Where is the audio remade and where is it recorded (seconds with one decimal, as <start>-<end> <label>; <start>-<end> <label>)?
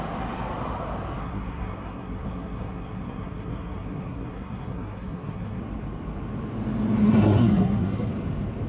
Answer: 0.0-1.2 recorded; 1.2-5.6 remade; 5.6-7.0 recorded; 7.0-8.1 remade; 8.1-8.7 recorded